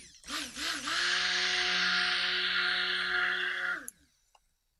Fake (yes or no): no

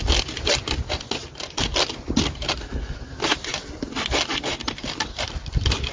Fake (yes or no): no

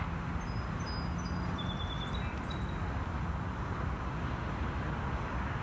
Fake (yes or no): no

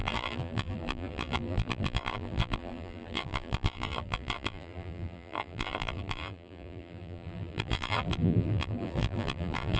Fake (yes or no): yes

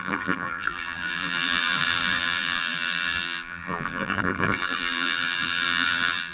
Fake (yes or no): yes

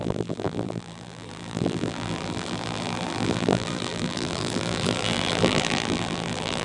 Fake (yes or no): yes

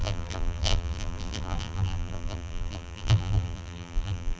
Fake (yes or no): yes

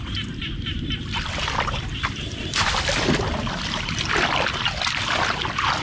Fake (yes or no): yes